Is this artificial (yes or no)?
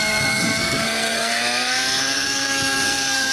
yes